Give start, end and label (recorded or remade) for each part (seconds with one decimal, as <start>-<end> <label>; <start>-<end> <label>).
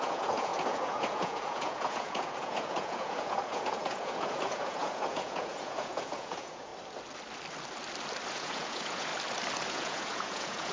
0.0-6.7 remade; 6.7-8.3 recorded; 8.3-9.1 remade; 9.1-9.7 recorded; 9.7-10.7 remade